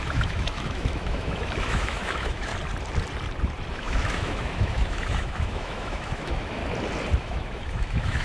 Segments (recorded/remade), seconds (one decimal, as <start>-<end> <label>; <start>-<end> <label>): 0.0-2.5 remade; 2.5-3.7 recorded; 3.7-6.6 remade; 6.6-7.2 recorded; 7.2-8.2 remade